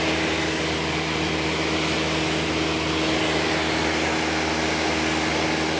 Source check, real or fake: real